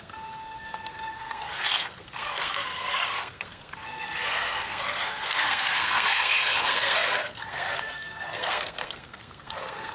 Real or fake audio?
fake